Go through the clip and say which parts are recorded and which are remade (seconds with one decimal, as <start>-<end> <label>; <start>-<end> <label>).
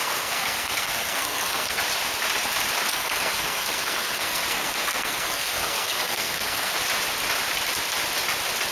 0.0-1.8 remade; 1.8-2.9 recorded; 2.9-6.7 remade; 6.7-8.7 recorded